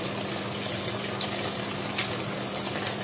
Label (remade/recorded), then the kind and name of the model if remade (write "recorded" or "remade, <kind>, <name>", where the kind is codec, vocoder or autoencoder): recorded